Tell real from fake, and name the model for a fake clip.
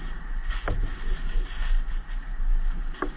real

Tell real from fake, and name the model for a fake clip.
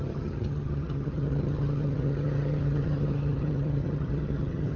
fake, vocoder, HiFi-GAN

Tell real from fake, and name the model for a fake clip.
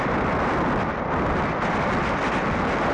real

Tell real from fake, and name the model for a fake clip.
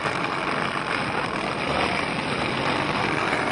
real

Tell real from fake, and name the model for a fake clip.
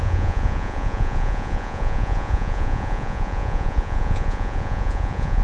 fake, vocoder, Vocos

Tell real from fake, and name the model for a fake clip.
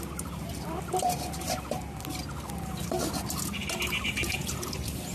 real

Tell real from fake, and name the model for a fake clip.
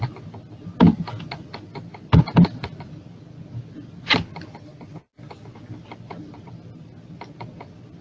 real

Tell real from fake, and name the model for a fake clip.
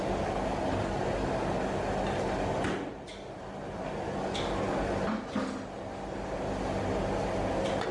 real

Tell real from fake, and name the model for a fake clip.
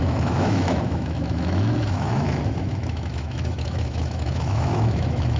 fake, autoencoder, DAC-VAE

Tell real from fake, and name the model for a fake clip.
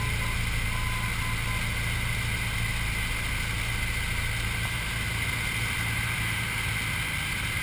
real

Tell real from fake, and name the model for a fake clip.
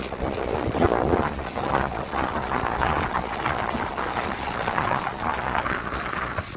fake, vocoder, Vocos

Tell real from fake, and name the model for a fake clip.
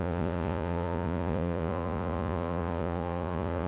fake, vocoder, Vocos